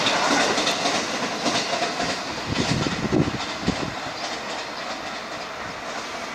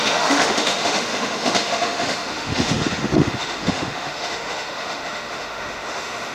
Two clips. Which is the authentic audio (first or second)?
first